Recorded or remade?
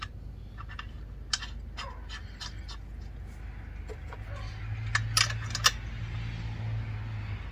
recorded